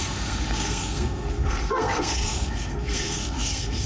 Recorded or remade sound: remade